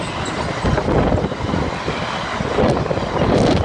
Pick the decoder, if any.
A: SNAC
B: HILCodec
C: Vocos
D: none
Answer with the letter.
D